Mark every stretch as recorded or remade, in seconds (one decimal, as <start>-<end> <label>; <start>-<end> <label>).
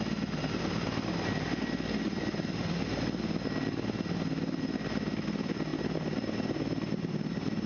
0.0-7.7 recorded